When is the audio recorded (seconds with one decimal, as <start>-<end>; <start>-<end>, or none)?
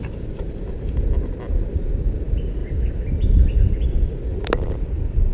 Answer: 0.0-5.3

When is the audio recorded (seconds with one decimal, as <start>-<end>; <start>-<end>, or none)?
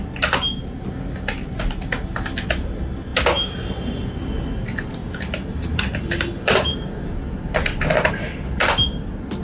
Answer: 0.0-5.0; 8.1-9.4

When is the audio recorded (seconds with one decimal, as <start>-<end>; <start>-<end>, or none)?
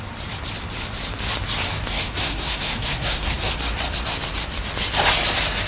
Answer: 0.0-1.9; 3.5-5.7